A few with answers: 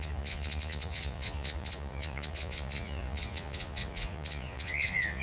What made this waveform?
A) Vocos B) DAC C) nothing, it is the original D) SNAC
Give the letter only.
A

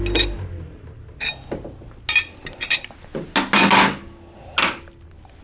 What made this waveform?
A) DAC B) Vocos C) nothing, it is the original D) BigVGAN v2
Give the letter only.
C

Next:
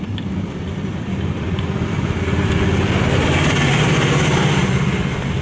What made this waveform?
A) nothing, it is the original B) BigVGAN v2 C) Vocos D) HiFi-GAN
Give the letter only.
A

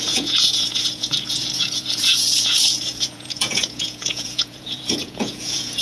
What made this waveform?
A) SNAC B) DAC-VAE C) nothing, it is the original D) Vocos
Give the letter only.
D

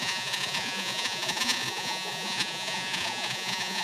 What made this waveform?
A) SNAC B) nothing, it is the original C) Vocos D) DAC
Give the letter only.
C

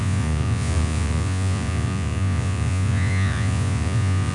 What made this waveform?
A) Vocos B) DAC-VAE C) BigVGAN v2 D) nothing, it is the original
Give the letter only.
A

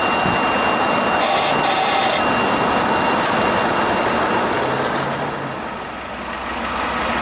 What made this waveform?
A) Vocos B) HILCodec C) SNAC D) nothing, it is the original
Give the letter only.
D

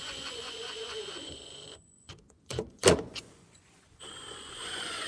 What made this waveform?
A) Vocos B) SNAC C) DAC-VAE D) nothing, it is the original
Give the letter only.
A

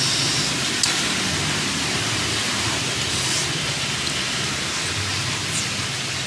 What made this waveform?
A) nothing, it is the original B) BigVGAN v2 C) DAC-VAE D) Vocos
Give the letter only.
A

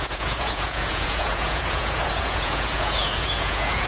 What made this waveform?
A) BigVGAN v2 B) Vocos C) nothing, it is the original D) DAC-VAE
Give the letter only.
B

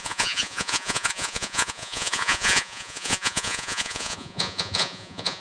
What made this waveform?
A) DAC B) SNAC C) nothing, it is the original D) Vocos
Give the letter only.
D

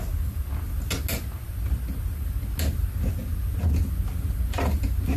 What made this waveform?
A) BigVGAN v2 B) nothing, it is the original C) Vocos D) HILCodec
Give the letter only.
B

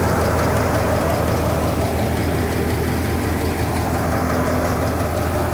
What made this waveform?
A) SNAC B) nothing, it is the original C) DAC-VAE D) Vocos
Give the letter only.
B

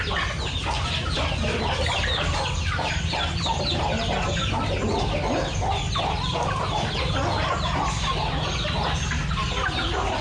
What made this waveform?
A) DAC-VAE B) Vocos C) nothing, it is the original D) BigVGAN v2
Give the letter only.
C